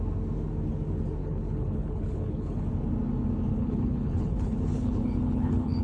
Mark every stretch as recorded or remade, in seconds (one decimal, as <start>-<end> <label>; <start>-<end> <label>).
0.0-1.2 recorded; 1.2-2.6 remade; 2.6-3.5 recorded; 3.5-5.8 remade